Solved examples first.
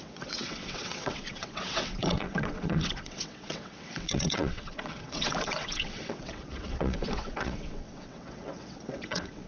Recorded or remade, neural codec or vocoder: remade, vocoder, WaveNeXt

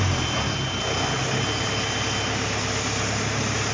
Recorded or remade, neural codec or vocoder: recorded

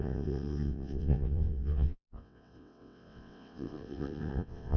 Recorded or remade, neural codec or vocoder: remade, vocoder, WaveNeXt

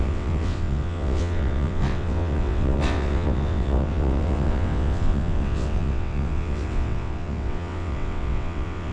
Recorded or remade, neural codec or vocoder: remade, vocoder, WaveNeXt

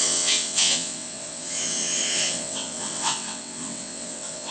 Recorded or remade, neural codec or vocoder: remade, vocoder, WaveNeXt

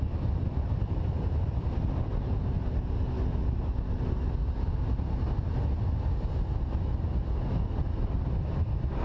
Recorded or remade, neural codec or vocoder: recorded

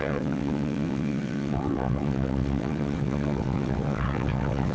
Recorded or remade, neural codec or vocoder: remade, vocoder, WaveNeXt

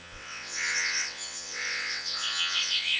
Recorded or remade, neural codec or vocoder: remade, vocoder, WaveNeXt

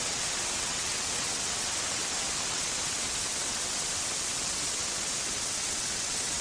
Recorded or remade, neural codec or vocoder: remade, vocoder, WaveNeXt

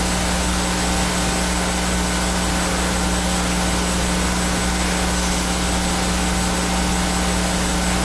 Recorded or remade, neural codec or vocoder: recorded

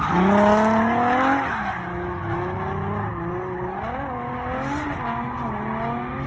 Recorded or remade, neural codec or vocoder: recorded